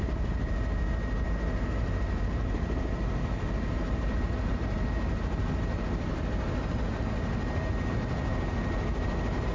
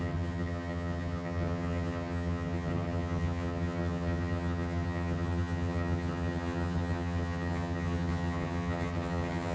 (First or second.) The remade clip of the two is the second